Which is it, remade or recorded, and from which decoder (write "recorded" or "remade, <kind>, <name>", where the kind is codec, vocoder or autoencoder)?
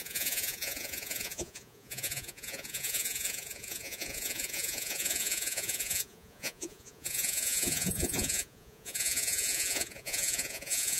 remade, vocoder, Vocos